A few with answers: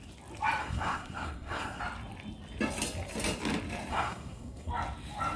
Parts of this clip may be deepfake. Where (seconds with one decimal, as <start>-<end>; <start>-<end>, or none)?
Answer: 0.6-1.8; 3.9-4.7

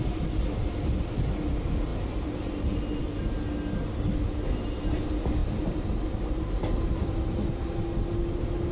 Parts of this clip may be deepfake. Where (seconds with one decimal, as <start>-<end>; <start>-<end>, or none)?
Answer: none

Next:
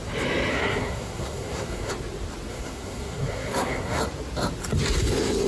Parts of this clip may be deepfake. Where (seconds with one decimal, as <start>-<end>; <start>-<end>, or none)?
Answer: 0.5-1.9; 2.5-4.0

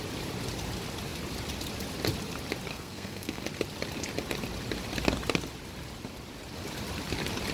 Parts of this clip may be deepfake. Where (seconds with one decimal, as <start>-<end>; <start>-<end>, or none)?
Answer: 2.7-3.4

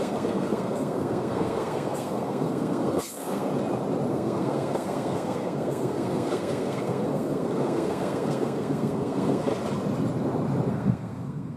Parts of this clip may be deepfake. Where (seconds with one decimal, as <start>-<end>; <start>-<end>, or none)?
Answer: 0.0-3.5; 4.1-9.5; 10.7-11.6

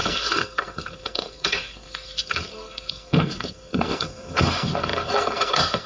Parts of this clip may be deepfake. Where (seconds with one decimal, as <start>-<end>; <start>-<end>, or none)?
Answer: 0.0-5.9

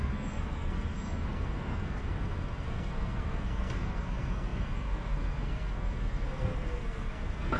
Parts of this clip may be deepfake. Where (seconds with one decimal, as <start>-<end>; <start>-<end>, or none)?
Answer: 0.0-7.6

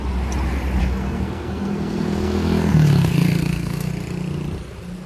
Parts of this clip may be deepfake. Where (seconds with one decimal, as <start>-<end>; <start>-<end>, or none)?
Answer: 0.8-3.9